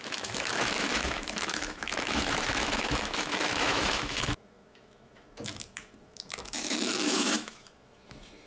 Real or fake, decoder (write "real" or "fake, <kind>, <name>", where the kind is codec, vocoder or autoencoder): fake, autoencoder, DAC-VAE